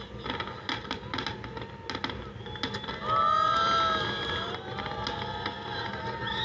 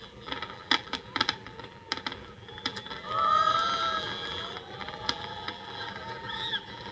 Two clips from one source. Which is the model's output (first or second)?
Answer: second